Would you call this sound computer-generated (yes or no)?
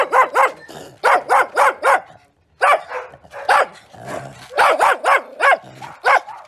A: no